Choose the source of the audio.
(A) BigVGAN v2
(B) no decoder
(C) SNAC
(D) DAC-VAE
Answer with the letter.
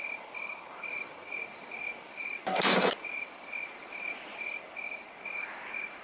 B